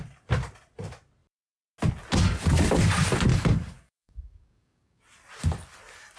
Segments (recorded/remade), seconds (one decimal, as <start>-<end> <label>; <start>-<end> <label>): 0.0-3.3 recorded; 3.3-5.0 remade; 5.0-6.2 recorded

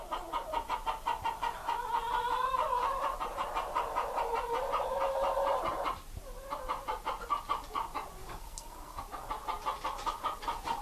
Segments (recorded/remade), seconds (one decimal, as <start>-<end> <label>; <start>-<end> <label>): 0.0-8.2 recorded; 8.2-9.0 remade; 9.0-10.8 recorded

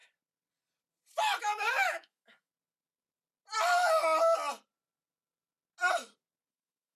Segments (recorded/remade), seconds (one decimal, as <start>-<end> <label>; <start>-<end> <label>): 0.0-1.4 recorded; 1.4-2.5 remade; 2.5-6.5 recorded; 6.5-7.0 remade